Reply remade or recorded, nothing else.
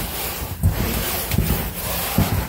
recorded